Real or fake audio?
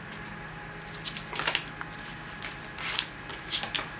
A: real